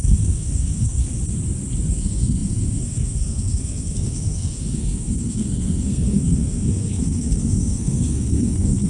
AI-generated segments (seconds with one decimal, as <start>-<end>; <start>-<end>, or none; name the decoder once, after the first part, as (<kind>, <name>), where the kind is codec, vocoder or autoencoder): 0.0-1.0 (codec, SNAC); 1.9-8.9